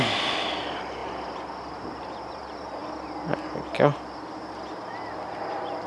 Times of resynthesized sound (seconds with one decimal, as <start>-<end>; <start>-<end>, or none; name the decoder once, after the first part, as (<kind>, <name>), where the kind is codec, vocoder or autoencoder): none